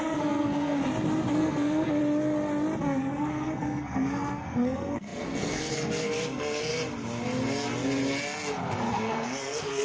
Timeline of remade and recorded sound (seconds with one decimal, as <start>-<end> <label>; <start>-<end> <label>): 0.0-0.8 remade; 0.8-1.3 recorded; 1.3-2.0 remade; 2.0-2.8 recorded; 2.8-6.7 remade; 6.7-8.9 recorded; 8.9-9.8 remade